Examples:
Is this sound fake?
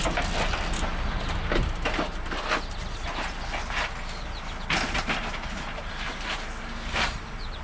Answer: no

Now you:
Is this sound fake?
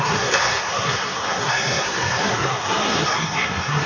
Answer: yes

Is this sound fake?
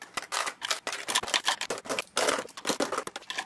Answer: no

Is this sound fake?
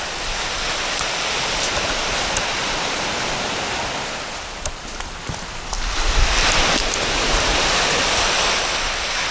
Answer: no